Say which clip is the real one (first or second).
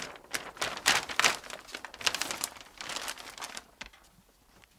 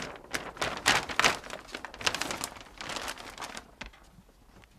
second